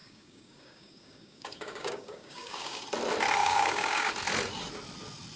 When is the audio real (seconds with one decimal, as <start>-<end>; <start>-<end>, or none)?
2.8-3.4; 4.1-5.4